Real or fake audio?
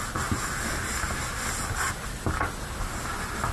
real